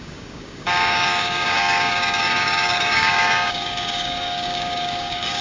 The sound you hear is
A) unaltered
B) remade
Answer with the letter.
B